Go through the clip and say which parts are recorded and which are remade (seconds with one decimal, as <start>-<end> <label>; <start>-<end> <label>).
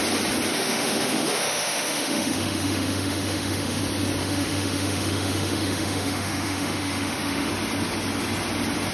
0.0-0.5 recorded; 0.5-3.8 remade; 3.8-4.2 recorded; 4.2-7.5 remade; 7.5-8.9 recorded